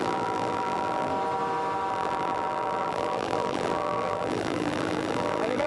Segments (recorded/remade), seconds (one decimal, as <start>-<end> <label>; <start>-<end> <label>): 0.0-1.1 remade; 1.1-1.9 recorded; 1.9-5.7 remade